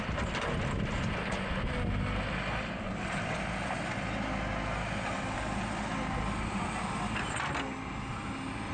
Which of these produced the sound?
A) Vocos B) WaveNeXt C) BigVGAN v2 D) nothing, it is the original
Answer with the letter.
D